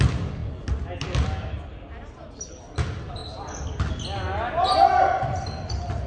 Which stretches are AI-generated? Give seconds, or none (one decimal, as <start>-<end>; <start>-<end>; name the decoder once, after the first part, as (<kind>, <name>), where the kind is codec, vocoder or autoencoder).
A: none